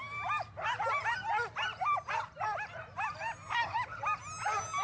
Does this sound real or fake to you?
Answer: real